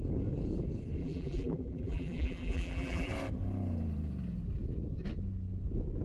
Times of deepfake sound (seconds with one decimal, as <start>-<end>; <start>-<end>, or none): 1.0-3.1